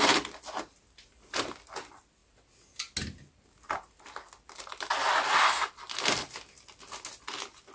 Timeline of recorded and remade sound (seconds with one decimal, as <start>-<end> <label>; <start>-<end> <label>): 0.0-7.7 recorded